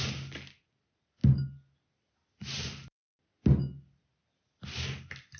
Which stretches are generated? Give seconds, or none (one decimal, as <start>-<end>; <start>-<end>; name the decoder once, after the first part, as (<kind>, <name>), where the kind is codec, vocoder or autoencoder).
none